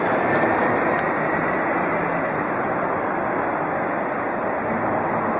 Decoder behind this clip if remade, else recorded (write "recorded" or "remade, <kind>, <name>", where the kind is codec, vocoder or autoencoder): recorded